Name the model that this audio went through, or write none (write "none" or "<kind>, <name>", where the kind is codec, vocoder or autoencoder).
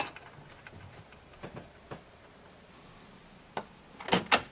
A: none